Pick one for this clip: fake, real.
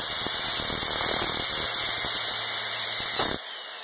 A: real